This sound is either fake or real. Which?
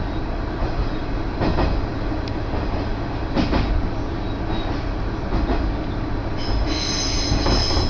real